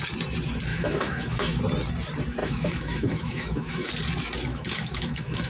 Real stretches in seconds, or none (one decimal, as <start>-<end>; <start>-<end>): 0.0-0.7; 1.6-2.4; 3.9-4.5